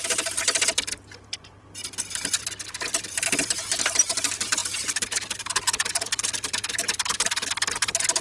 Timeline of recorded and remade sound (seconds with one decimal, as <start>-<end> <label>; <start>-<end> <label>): 0.0-4.6 recorded; 4.6-7.5 remade; 7.5-8.2 recorded